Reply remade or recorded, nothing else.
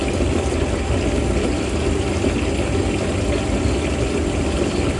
recorded